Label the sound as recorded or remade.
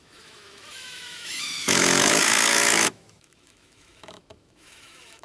remade